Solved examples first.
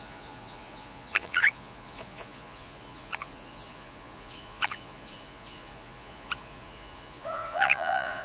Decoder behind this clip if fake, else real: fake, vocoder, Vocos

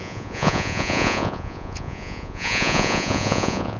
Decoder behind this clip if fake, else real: fake, vocoder, Vocos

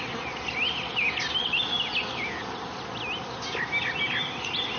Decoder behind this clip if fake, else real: real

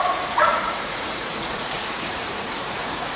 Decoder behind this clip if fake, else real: fake, vocoder, Vocos